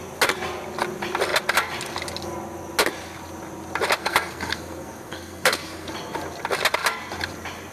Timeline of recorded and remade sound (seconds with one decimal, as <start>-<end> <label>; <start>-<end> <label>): 0.0-4.0 recorded; 4.0-5.9 remade; 5.9-7.7 recorded